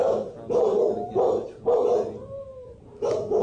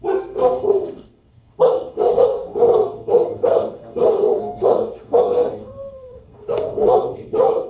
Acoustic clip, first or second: first